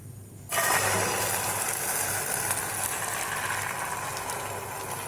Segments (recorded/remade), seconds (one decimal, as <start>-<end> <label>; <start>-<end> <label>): 0.0-5.1 recorded